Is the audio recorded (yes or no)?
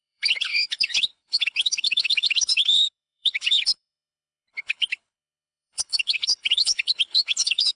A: no